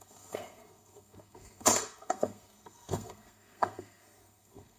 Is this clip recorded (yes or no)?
no